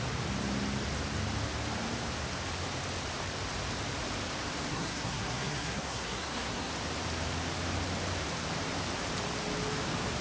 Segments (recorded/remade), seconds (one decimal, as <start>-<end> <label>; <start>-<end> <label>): 0.0-4.7 recorded; 4.7-6.7 remade; 6.7-10.2 recorded